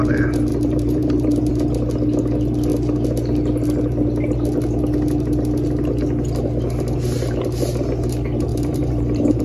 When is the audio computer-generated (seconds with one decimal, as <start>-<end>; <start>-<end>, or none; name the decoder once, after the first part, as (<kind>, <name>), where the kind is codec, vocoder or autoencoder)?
0.5-1.5 (vocoder, BigVGAN v2); 8.5-9.4